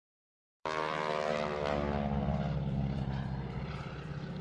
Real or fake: fake